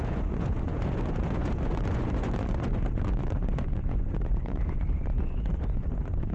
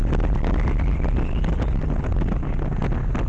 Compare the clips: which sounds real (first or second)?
second